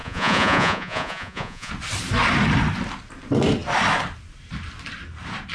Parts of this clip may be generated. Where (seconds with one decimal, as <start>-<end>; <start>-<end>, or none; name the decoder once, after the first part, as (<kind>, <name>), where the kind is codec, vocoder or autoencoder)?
0.0-1.7 (vocoder, Vocos)